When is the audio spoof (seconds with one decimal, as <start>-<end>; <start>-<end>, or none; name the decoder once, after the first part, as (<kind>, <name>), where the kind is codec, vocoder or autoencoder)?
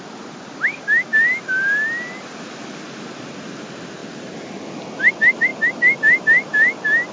4.0-4.6 (vocoder, BigVGAN v2)